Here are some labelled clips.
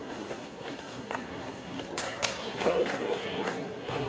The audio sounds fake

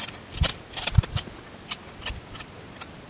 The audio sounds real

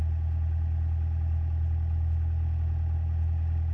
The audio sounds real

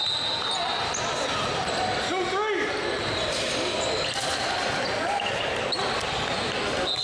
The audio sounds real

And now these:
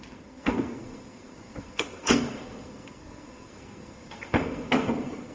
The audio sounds fake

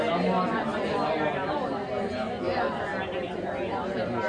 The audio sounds real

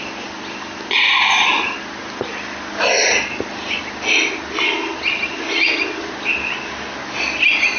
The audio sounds real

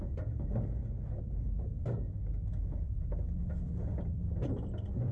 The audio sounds real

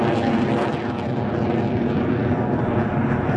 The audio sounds real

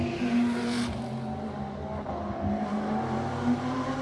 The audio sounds real